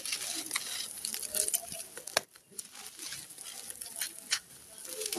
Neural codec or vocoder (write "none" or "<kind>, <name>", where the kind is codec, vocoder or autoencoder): none